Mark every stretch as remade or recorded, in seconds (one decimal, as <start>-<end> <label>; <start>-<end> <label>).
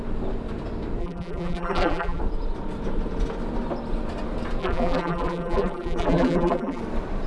0.0-1.0 recorded; 1.0-2.2 remade; 2.2-4.6 recorded; 4.6-6.8 remade; 6.8-7.3 recorded